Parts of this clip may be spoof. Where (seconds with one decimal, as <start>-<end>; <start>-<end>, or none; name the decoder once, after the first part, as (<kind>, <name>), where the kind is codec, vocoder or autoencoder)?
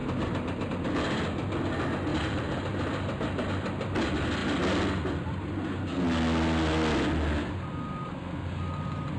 0.0-0.7 (vocoder, BigVGAN v2); 2.1-3.4